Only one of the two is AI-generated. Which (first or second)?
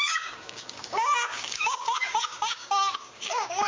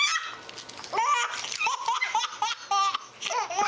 first